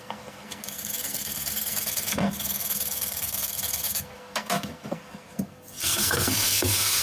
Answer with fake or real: fake